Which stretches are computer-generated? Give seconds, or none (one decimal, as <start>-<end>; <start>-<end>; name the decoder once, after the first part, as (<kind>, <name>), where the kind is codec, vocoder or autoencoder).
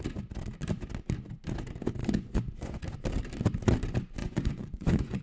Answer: 2.0-2.8 (vocoder, Vocos); 4.2-5.2